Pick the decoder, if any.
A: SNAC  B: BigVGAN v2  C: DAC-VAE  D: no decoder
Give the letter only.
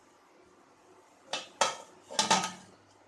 D